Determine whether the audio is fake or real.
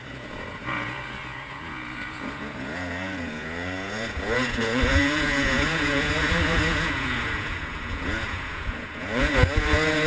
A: fake